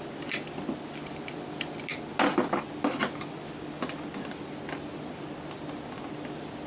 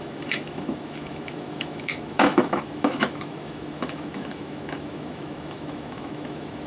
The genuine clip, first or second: first